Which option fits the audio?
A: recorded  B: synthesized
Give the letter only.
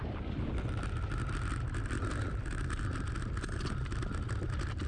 A